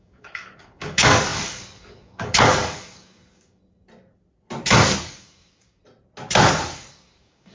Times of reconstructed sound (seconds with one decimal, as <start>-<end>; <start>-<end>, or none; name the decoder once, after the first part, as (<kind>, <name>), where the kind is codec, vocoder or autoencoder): 0.0-3.6 (codec, DAC); 5.0-5.8; 6.9-7.5